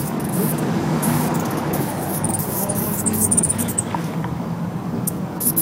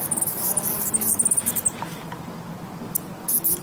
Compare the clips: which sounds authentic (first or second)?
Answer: second